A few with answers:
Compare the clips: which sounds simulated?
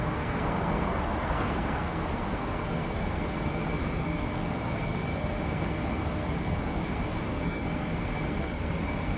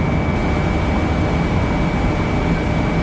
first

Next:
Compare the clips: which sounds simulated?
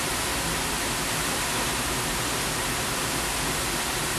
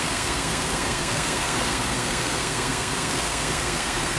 second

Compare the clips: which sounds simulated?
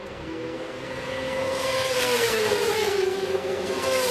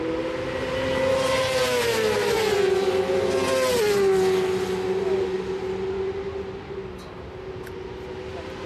first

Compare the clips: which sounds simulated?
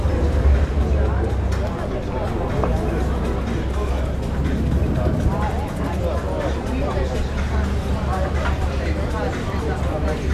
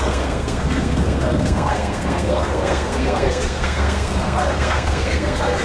second